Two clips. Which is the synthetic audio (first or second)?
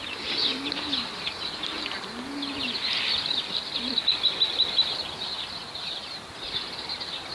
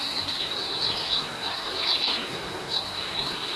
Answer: second